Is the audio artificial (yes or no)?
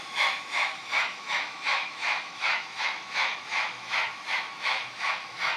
yes